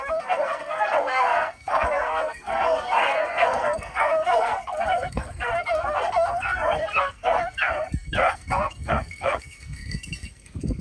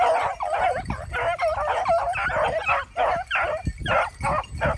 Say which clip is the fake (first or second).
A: first